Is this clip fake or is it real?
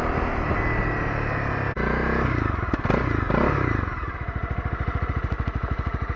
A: real